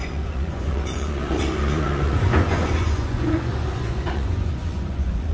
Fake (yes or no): yes